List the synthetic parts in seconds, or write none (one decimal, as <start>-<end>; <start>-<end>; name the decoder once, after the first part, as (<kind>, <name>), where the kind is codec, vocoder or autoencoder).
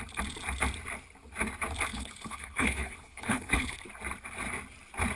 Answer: 1.9-3.8 (codec, HILCodec)